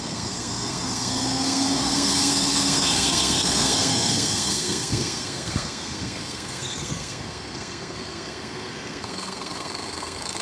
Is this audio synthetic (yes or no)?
yes